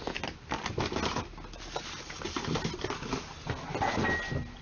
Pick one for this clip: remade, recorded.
recorded